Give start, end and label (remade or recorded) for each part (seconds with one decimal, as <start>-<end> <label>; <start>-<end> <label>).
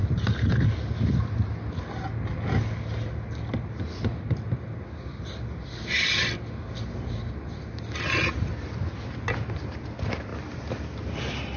0.0-10.3 recorded; 10.3-11.6 remade